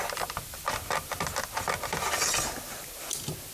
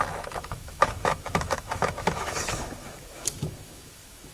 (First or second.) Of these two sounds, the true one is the first